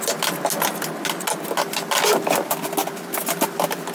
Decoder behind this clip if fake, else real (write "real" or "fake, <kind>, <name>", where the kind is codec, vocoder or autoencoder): real